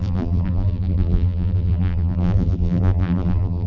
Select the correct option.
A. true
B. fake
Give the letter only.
B